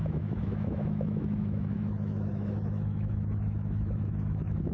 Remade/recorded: remade